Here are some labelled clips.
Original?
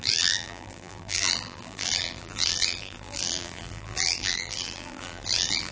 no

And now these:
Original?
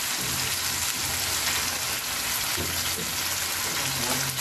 yes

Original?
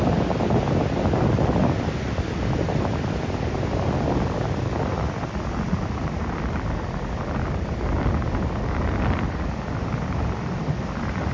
yes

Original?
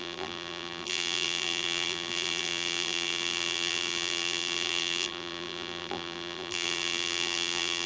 no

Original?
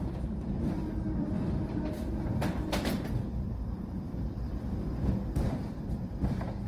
no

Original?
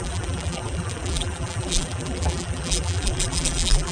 no